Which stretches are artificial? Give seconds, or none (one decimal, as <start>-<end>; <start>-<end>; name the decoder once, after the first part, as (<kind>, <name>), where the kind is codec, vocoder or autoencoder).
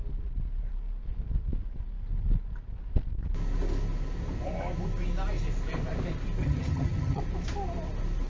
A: 6.4-7.2 (vocoder, HiFi-GAN)